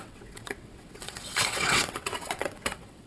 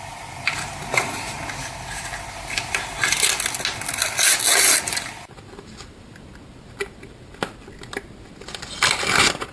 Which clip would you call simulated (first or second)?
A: first